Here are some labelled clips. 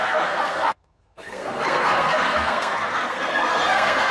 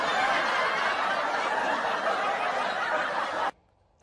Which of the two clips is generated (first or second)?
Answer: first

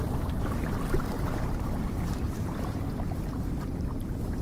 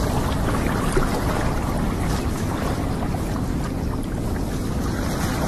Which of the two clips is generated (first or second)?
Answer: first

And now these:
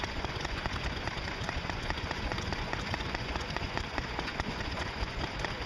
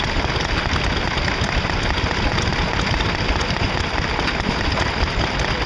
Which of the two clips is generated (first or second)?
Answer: first